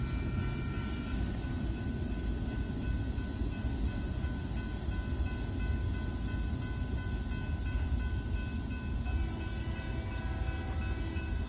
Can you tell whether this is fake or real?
real